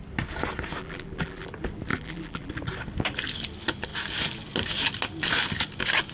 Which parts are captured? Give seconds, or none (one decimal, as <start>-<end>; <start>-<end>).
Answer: 0.0-0.8; 1.5-1.9; 2.5-6.1